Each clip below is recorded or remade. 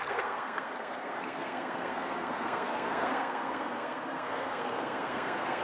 remade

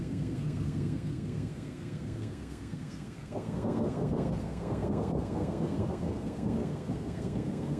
remade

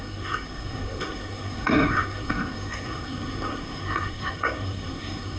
remade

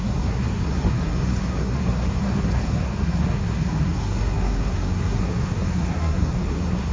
remade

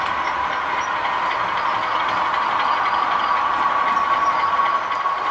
recorded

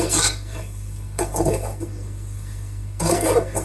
remade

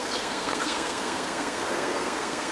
remade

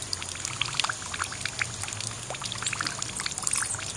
recorded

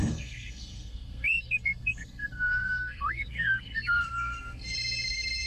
remade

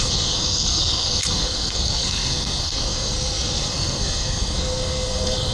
remade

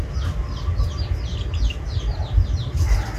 recorded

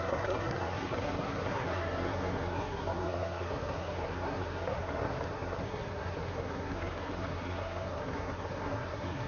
remade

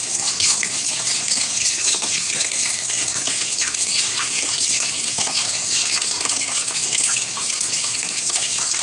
remade